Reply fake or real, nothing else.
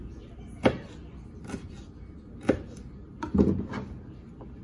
real